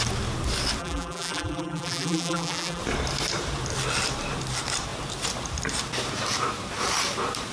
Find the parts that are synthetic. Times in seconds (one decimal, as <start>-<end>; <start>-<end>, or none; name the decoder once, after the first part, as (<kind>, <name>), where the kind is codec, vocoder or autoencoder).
0.8-2.8 (vocoder, BigVGAN v2)